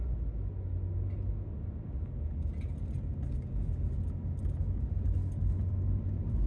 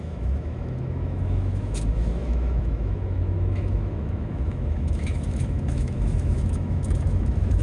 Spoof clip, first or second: second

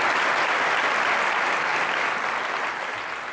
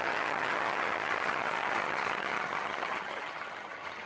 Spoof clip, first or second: second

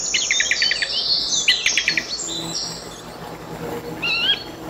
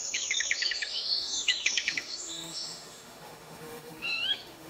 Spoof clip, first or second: second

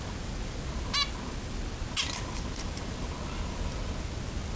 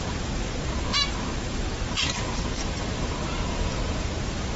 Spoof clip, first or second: second